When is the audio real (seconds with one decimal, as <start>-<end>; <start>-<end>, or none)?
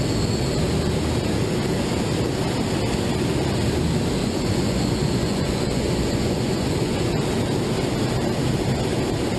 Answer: 0.0-4.2; 7.1-9.4